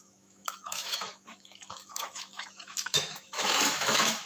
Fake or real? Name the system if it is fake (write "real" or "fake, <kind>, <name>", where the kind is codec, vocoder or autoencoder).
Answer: fake, autoencoder, DAC-VAE